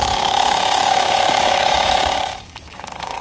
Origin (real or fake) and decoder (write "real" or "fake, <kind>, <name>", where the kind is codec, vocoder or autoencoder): fake, codec, DAC